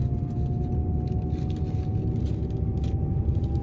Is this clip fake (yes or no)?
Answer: no